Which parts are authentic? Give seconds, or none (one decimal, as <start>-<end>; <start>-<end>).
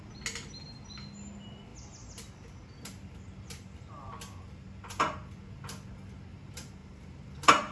0.0-7.7